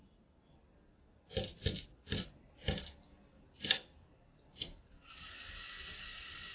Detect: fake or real fake